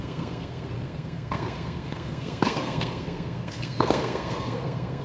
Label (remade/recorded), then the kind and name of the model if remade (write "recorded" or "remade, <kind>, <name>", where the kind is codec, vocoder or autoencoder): remade, codec, SNAC